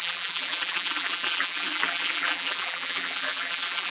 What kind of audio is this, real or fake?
fake